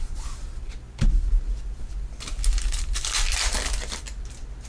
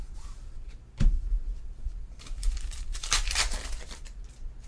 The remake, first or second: second